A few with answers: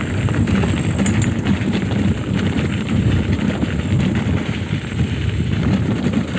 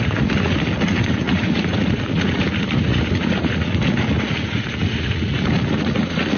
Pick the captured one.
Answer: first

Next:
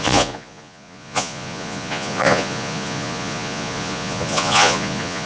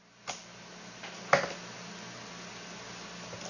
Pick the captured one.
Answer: second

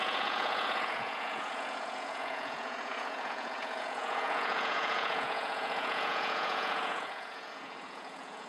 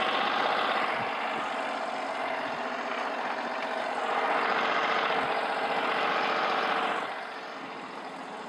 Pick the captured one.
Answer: second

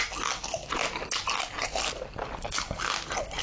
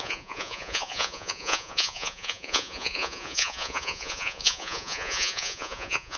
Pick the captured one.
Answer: first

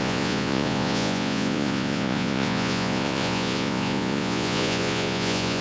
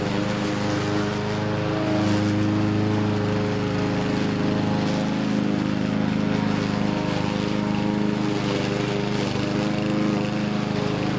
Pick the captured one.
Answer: second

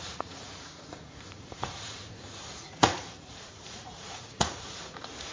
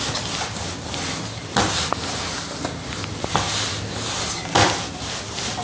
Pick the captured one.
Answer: second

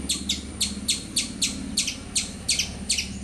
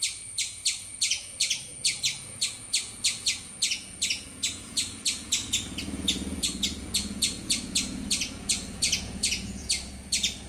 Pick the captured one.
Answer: first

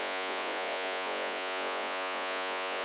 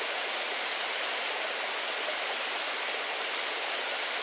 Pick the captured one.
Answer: second